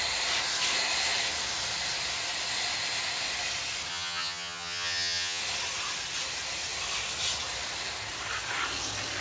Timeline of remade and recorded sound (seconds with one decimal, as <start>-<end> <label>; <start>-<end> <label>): 0.0-3.9 recorded; 3.9-5.4 remade; 5.4-9.2 recorded